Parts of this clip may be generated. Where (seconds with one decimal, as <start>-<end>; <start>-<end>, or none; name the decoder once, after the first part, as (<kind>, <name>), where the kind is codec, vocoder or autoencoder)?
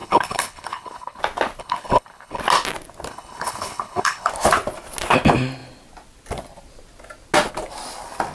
0.0-1.2 (codec, HILCodec); 1.6-2.4; 3.1-4.3